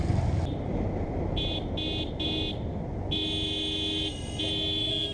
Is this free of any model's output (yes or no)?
yes